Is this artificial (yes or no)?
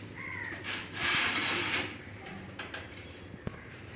yes